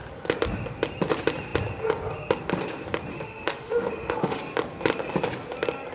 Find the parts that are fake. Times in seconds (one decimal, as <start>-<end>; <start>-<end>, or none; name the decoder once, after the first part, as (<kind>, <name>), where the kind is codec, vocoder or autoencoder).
3.1-4.4 (autoencoder, DAC-VAE)